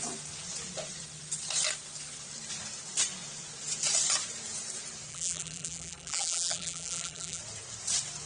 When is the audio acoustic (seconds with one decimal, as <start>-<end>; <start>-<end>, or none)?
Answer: 0.0-5.1; 7.4-8.3